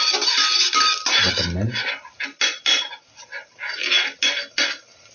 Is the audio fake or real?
real